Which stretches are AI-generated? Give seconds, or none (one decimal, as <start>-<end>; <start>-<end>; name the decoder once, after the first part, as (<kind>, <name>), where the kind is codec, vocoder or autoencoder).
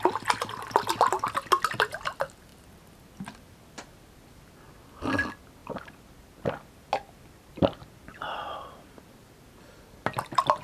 none